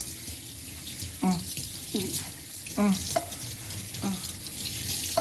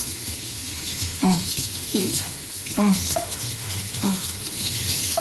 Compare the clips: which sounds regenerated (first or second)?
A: second